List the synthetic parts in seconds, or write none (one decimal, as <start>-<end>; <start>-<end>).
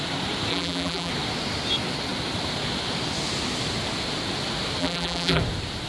0.5-1.1; 4.8-5.4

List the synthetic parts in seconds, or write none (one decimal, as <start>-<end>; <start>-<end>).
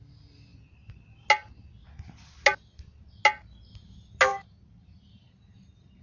4.3-6.0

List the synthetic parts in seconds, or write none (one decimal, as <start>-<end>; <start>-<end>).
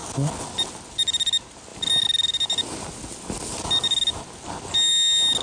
none